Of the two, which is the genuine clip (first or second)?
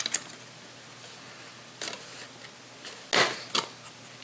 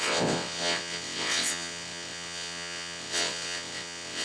first